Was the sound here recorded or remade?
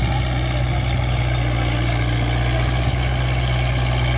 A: recorded